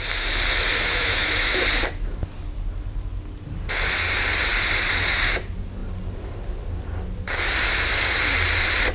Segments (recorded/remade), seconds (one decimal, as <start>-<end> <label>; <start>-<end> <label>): 0.0-0.7 recorded; 0.7-1.6 remade; 1.6-8.9 recorded